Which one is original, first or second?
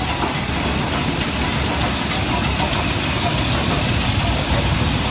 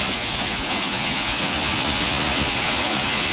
first